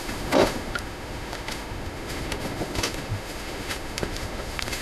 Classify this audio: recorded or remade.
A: remade